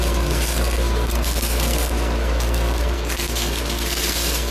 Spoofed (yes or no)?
yes